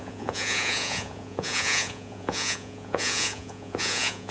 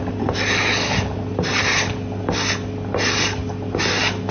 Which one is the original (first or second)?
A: second